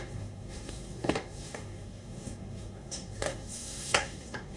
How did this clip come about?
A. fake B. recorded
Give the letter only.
A